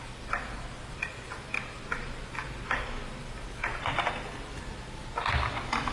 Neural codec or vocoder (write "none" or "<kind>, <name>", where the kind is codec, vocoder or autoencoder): none